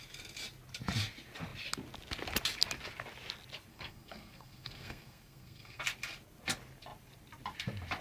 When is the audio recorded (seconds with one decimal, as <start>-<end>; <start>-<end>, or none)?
0.0-3.7; 5.8-8.0